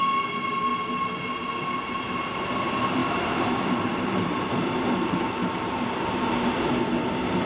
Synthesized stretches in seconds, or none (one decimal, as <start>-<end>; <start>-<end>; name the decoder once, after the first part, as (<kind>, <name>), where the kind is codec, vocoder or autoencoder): 3.0-6.3 (vocoder, BigVGAN v2)